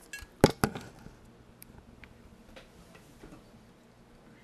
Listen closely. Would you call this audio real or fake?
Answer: real